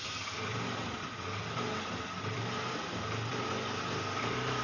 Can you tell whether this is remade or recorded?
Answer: recorded